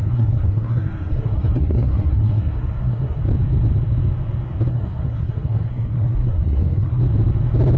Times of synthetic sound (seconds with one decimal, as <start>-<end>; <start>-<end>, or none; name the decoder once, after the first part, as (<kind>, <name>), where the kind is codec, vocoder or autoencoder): 0.0-3.2 (codec, SNAC); 4.7-7.0